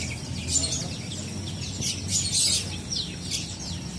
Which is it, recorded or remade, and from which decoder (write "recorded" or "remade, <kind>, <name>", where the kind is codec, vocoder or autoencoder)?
recorded